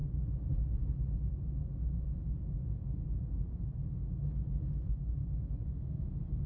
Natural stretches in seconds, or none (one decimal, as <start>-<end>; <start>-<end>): 0.0-5.2; 5.8-6.5